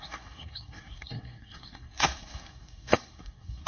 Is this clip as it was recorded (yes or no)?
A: no